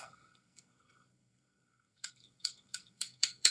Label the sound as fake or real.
fake